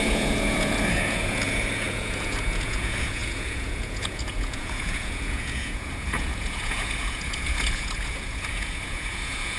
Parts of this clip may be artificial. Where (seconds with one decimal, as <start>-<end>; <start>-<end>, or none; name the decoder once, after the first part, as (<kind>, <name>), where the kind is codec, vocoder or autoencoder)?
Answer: 0.0-9.6 (vocoder, Vocos)